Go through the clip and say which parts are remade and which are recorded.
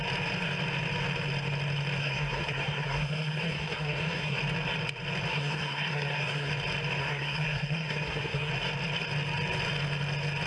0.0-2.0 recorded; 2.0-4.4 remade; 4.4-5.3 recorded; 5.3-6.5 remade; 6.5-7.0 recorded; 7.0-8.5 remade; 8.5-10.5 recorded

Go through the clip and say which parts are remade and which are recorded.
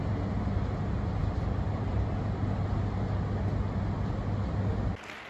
0.0-1.2 recorded; 1.2-2.4 remade; 2.4-5.3 recorded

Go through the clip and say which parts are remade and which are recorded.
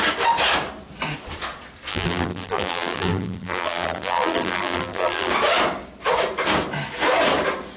0.0-1.9 recorded; 1.9-5.3 remade; 5.3-7.8 recorded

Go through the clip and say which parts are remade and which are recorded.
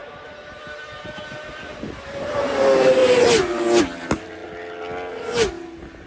0.0-6.1 recorded